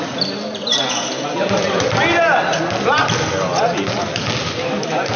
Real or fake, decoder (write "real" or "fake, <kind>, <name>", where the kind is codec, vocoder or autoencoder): real